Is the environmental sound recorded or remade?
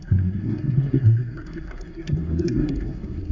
remade